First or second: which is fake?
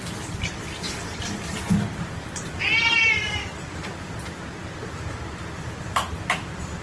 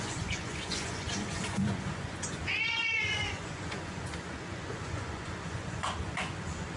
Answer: second